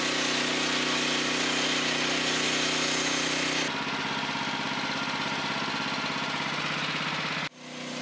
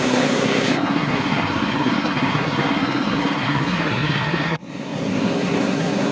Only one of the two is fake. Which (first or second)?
second